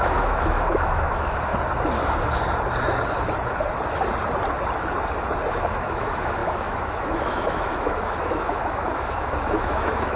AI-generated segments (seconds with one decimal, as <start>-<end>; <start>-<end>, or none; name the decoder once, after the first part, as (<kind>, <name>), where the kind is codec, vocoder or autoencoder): 0.0-1.5 (autoencoder, DAC-VAE); 5.5-10.2